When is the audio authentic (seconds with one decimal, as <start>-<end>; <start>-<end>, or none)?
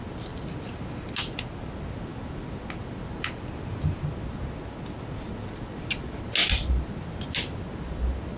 0.0-8.4